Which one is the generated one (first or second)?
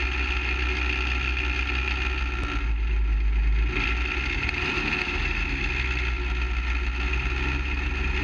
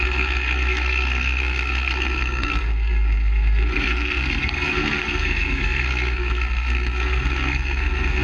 second